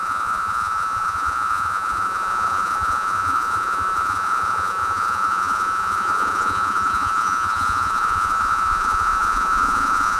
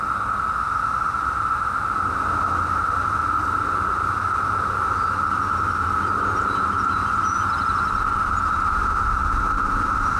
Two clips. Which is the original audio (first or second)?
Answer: second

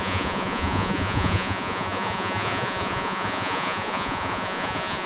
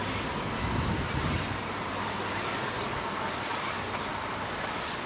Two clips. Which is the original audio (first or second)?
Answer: second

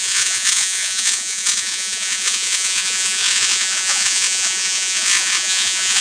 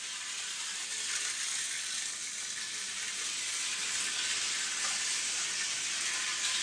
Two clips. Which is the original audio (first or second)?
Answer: second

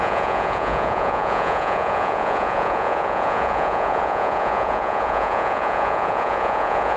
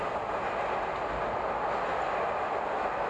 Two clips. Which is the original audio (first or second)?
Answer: second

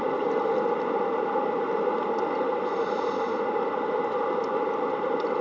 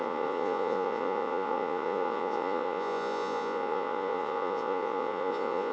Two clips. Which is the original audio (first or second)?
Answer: first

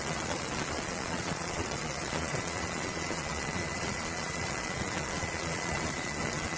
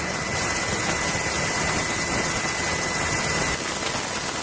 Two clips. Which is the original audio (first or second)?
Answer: second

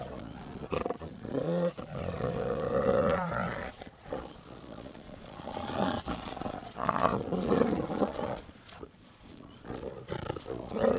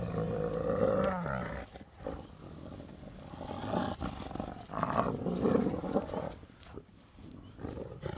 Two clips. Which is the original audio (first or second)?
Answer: second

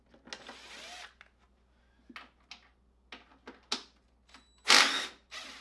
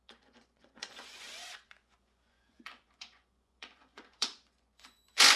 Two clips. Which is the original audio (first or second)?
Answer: first